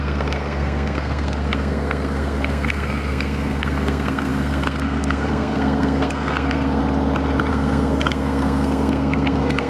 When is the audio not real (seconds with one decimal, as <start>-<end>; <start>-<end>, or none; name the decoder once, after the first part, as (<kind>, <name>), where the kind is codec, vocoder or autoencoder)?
0.0-6.8 (codec, SNAC); 7.5-9.7